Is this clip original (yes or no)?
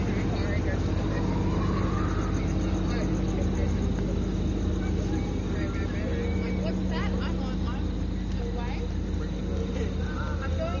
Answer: yes